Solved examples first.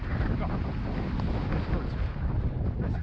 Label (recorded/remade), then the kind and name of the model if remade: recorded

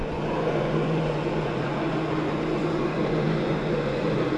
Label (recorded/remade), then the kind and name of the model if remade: remade, vocoder, Vocos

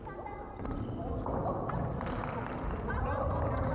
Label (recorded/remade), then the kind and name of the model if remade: recorded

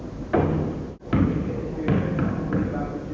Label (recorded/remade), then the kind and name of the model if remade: recorded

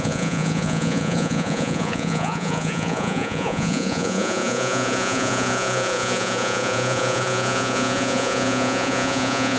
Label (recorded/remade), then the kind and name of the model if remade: remade, vocoder, Vocos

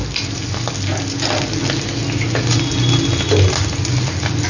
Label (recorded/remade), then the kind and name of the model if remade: recorded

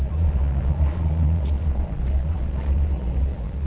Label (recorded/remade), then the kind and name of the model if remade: remade, vocoder, Vocos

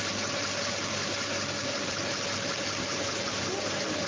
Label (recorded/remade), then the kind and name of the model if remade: recorded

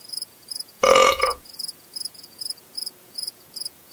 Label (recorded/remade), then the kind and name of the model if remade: remade, vocoder, Vocos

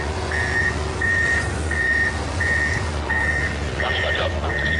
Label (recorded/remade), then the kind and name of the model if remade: remade, vocoder, Vocos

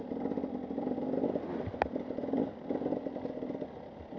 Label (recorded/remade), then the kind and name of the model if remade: recorded